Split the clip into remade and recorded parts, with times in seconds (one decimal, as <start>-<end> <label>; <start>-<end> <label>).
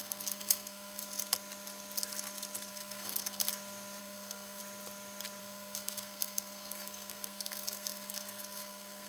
0.0-1.0 remade; 1.0-2.7 recorded; 2.7-3.4 remade; 3.4-4.0 recorded; 4.0-4.6 remade; 4.6-5.4 recorded; 5.4-9.1 remade